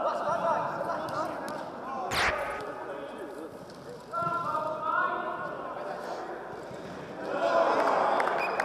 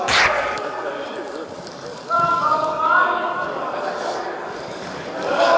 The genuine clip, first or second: first